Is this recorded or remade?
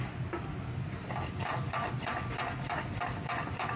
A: recorded